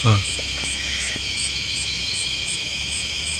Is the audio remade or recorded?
remade